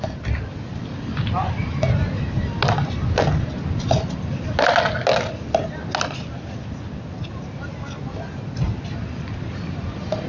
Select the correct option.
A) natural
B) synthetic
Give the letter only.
A